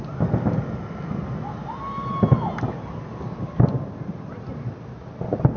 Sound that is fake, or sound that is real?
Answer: real